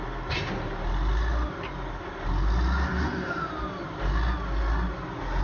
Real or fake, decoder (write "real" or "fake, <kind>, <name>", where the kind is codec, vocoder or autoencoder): real